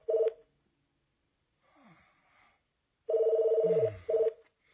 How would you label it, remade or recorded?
recorded